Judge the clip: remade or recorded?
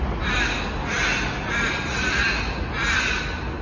recorded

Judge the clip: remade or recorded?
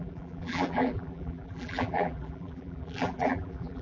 remade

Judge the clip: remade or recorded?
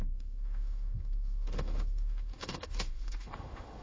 remade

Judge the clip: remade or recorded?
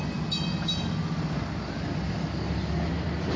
recorded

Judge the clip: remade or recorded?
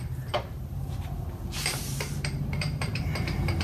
remade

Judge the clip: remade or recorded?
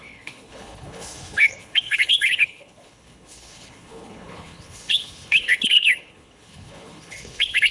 remade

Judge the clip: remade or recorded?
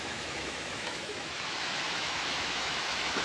remade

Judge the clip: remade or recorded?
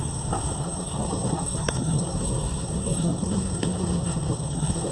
remade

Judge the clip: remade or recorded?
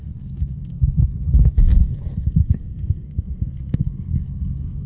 remade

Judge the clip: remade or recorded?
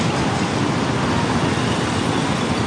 recorded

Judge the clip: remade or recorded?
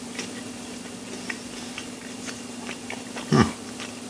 recorded